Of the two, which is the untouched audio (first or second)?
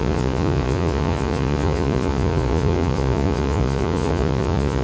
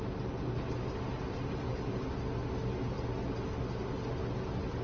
second